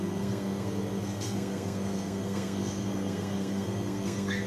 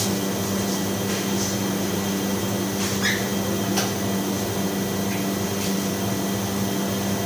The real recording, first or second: second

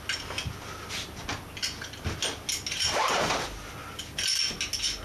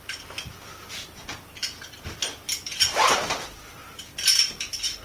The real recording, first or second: first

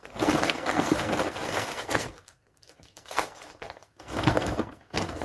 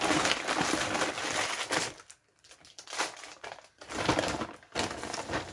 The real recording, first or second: second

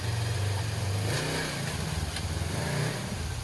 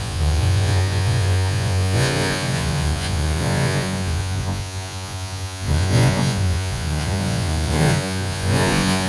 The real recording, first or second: first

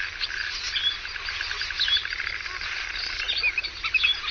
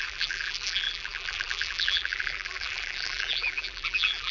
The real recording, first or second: first